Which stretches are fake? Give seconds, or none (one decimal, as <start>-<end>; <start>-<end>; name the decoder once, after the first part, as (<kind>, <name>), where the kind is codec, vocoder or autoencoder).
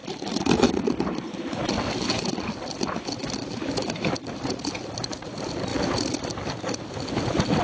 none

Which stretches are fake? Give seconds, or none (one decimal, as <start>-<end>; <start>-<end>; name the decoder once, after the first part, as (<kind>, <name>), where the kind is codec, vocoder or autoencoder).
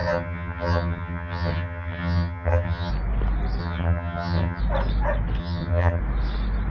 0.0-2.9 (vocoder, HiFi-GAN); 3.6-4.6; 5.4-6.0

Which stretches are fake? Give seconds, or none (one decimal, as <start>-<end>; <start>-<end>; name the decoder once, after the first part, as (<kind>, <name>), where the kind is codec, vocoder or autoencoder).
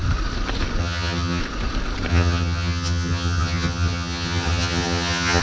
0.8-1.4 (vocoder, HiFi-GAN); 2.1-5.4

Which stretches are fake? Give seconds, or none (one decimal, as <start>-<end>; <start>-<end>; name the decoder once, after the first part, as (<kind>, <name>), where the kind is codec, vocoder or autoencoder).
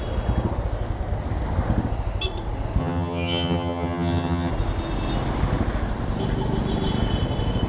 2.8-4.5 (vocoder, HiFi-GAN)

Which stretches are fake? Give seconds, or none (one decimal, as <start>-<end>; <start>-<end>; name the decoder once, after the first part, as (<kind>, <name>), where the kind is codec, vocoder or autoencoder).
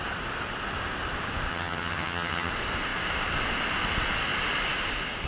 1.5-2.5 (vocoder, HiFi-GAN)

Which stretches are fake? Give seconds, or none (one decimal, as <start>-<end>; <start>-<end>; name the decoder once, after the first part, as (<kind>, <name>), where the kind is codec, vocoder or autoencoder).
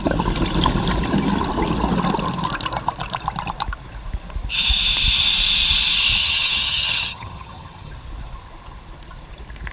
6.2-7.9 (vocoder, HiFi-GAN)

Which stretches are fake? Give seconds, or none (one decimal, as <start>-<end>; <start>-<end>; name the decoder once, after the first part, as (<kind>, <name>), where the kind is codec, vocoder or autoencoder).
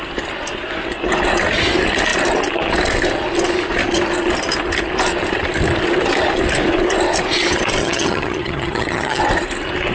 7.8-9.2 (vocoder, HiFi-GAN)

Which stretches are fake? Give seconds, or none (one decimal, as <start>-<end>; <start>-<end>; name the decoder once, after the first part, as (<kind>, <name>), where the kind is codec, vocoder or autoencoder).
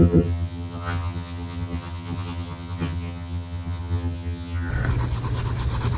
0.0-4.7 (vocoder, HiFi-GAN)